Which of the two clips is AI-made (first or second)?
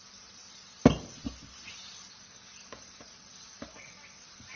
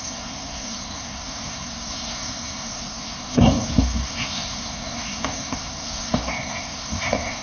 second